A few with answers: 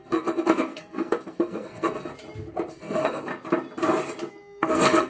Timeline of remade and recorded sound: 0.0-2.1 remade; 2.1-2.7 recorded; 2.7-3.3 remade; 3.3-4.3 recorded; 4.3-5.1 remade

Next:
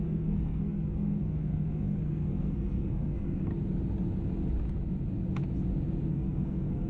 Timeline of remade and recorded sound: 0.0-3.5 remade; 3.5-6.1 recorded; 6.1-6.9 remade

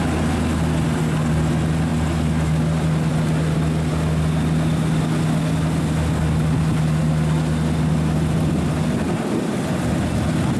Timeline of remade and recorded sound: 0.0-10.6 recorded

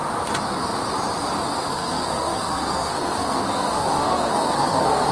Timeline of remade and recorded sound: 0.0-1.7 recorded; 1.7-5.1 remade

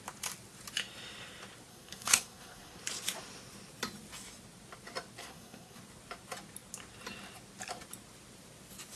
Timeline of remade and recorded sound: 0.0-1.7 recorded; 1.7-2.8 remade; 2.8-5.2 recorded; 5.2-5.8 remade; 5.8-9.0 recorded